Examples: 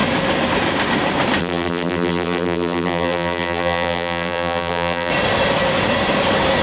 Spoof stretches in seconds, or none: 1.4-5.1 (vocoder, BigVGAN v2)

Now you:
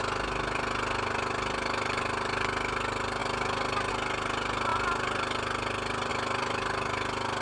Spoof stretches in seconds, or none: none

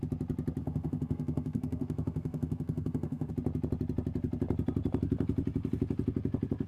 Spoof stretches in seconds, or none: 0.6-3.3 (codec, SNAC)

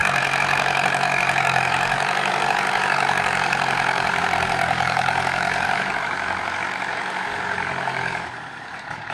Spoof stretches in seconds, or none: 0.0-9.1 (codec, DAC)